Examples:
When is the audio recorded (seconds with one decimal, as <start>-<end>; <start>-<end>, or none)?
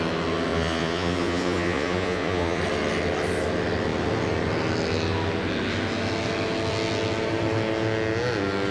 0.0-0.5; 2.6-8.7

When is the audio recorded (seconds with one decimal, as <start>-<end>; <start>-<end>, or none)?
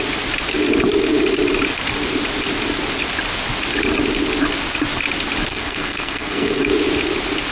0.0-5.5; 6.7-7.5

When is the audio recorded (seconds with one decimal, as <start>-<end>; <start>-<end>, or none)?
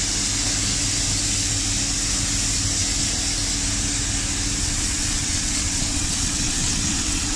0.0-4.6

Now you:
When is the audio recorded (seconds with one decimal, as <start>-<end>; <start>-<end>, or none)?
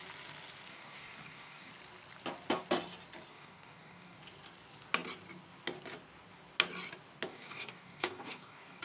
0.0-0.7; 1.7-3.3; 4.2-7.3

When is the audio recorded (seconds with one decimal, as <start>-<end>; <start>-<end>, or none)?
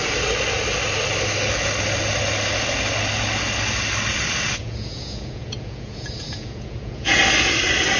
0.0-4.6; 7.2-8.0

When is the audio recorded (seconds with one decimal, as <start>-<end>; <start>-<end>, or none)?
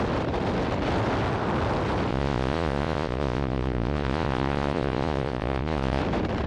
0.0-2.1; 6.0-6.5